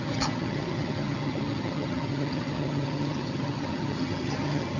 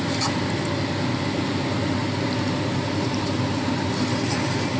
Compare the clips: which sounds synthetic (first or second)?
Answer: first